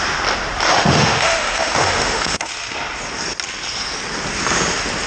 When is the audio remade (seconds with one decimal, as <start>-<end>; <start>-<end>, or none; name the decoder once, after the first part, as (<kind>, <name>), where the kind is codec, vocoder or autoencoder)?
0.7-2.5 (autoencoder, DAC-VAE)